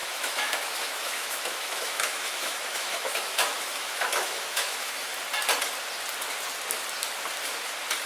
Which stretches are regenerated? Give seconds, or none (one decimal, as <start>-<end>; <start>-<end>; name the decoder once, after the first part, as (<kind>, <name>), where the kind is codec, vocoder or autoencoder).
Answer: 0.0-5.1 (autoencoder, DAC-VAE)